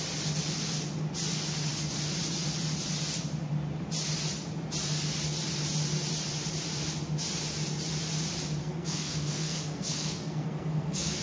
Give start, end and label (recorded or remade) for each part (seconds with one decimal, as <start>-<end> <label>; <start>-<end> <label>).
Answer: 0.0-8.6 recorded; 8.6-11.2 remade